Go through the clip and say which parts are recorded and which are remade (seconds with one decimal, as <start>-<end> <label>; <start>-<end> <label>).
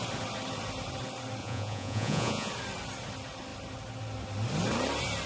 0.0-1.4 recorded; 1.4-2.5 remade; 2.5-5.3 recorded